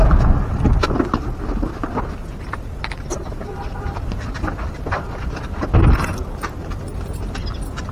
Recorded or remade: recorded